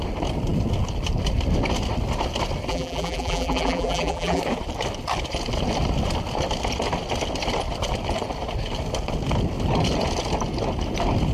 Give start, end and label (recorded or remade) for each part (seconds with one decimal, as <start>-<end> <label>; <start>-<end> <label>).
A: 0.0-2.7 recorded; 2.7-4.4 remade; 4.4-11.3 recorded